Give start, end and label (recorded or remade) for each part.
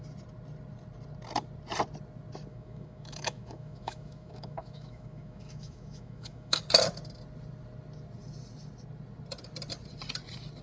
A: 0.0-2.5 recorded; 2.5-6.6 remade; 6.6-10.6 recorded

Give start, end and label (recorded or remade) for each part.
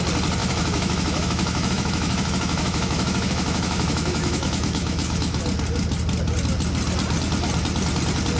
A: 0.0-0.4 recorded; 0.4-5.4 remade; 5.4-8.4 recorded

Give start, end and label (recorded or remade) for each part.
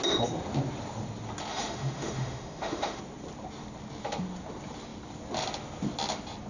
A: 0.0-1.5 recorded; 1.5-3.0 remade; 3.0-6.5 recorded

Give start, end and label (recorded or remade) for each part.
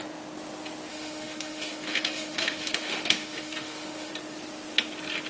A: 0.0-0.9 recorded; 0.9-4.1 remade; 4.1-5.3 recorded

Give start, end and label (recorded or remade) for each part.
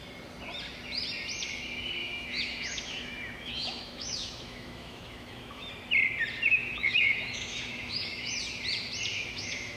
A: 0.0-2.0 recorded; 2.0-5.7 remade; 5.7-6.6 recorded; 6.6-8.3 remade; 8.3-9.1 recorded; 9.1-9.8 remade